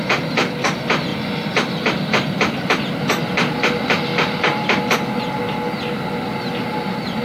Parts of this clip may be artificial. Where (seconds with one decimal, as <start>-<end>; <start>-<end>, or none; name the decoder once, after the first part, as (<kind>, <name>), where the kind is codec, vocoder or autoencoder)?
none